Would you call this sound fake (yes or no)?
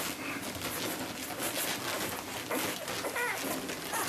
no